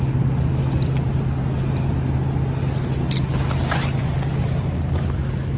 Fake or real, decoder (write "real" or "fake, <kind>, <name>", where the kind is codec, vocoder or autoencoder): real